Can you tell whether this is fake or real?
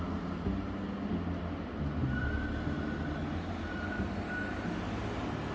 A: real